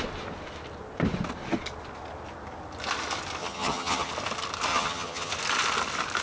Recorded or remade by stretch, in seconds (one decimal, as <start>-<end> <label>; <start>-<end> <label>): 0.0-3.4 recorded; 3.4-4.1 remade; 4.1-4.7 recorded; 4.7-5.3 remade; 5.3-6.2 recorded

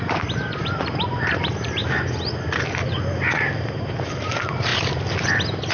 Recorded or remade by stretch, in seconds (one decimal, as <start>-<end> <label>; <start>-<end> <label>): 0.0-1.8 remade; 1.8-4.0 recorded; 4.0-4.7 remade; 4.7-5.7 recorded

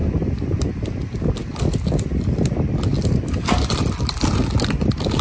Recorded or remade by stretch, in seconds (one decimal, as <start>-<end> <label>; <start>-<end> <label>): 0.0-5.2 recorded

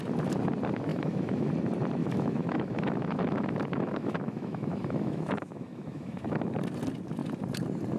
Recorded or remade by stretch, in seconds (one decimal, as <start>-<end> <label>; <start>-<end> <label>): 0.0-0.9 recorded; 0.9-1.5 remade; 1.5-2.0 recorded; 2.0-6.5 remade; 6.5-8.0 recorded

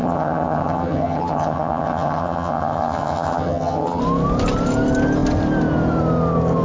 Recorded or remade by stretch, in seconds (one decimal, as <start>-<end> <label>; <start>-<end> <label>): 0.0-4.0 remade; 4.0-6.6 recorded

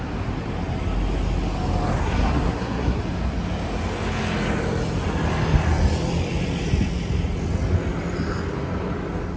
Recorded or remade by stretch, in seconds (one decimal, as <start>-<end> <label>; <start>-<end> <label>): 0.0-2.0 recorded; 2.0-3.0 remade; 3.0-9.4 recorded

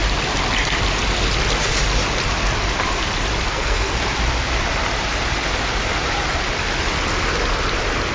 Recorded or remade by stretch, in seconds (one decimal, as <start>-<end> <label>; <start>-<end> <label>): 0.0-3.5 recorded; 3.5-4.0 remade; 4.0-8.1 recorded